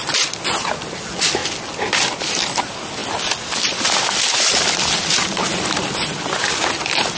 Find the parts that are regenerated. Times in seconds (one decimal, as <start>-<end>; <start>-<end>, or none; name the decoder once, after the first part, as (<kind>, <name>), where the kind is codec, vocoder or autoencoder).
none